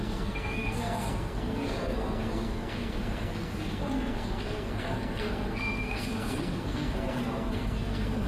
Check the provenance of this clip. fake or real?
fake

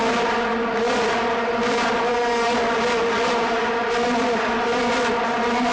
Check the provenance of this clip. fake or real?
real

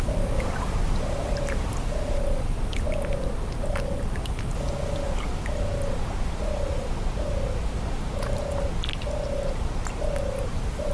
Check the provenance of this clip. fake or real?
real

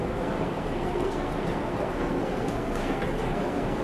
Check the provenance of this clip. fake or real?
fake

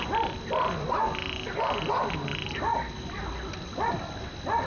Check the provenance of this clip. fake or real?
real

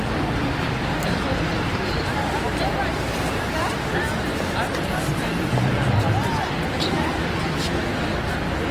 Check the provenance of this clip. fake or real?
real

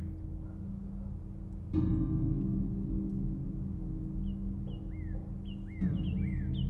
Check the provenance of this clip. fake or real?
real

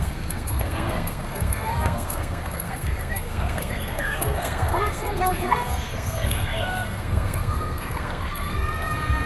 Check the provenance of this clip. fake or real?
fake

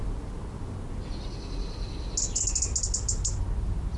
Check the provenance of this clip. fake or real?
real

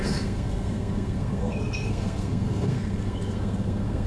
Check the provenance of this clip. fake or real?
fake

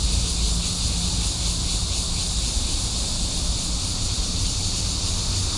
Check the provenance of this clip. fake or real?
real